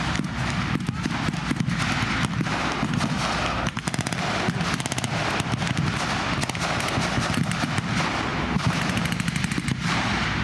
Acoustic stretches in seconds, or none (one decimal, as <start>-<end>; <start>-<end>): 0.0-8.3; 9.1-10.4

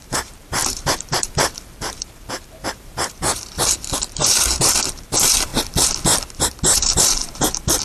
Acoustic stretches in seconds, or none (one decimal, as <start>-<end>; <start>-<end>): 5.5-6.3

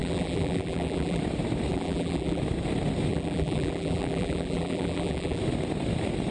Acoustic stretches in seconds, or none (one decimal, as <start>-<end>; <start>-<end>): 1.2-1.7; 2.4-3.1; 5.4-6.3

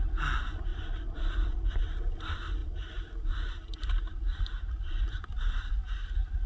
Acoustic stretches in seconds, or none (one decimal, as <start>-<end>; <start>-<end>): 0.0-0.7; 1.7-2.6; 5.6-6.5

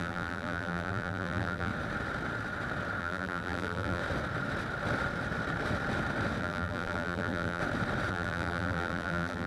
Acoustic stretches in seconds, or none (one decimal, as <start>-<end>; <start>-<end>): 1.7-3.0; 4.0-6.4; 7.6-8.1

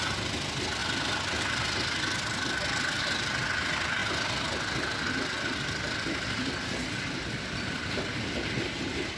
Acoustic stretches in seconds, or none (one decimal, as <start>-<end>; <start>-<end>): 0.0-9.2